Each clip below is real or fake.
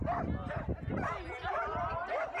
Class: real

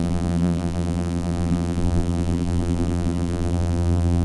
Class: fake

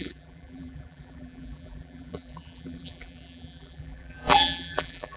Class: fake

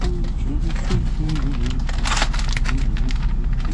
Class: real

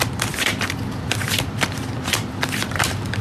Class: fake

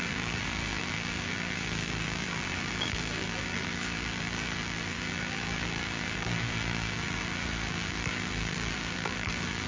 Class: fake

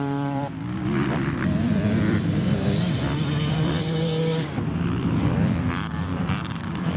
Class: fake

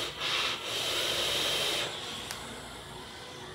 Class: fake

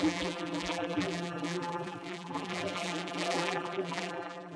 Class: fake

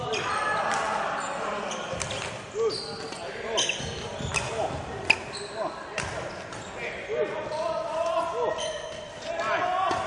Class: real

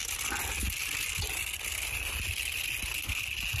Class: real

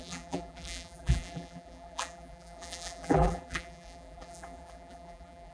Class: fake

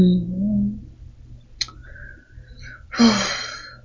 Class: real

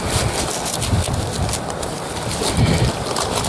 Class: real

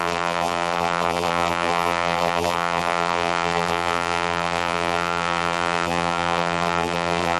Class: fake